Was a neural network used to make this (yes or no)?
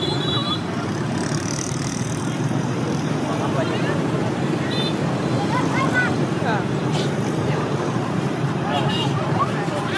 yes